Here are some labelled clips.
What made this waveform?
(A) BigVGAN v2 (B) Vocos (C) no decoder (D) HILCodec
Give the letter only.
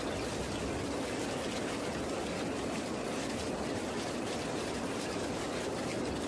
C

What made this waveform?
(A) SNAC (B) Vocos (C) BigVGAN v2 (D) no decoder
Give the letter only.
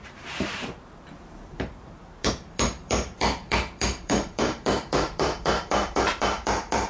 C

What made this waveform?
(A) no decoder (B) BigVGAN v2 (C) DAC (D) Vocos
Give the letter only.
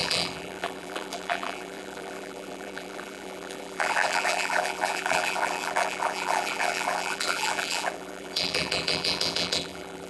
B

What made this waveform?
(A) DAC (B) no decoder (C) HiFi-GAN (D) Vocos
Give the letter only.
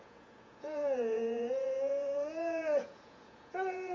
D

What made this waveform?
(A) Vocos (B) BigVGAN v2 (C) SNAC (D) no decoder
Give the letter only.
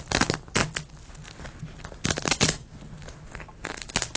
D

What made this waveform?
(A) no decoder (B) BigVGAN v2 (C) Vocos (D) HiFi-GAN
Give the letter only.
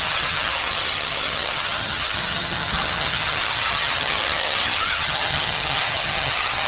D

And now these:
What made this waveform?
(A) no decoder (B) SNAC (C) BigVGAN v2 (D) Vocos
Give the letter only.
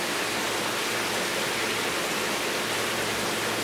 A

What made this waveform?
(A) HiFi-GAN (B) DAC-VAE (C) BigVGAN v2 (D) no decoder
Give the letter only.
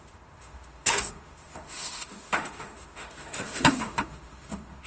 B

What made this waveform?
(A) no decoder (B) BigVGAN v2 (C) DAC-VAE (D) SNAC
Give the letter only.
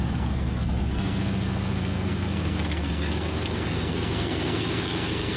D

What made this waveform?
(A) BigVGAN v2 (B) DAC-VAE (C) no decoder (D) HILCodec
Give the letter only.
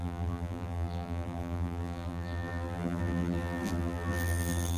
A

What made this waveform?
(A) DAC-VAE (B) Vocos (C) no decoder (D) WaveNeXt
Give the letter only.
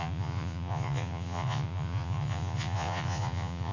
B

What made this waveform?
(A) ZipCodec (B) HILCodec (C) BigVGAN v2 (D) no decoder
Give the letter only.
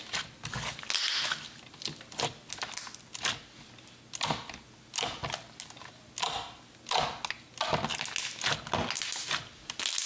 D